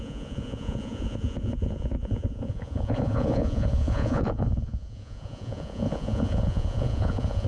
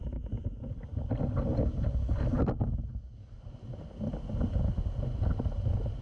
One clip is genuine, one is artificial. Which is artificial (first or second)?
first